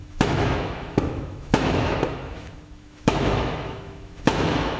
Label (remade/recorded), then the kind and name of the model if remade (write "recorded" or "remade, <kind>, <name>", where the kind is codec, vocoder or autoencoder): remade, autoencoder, DAC-VAE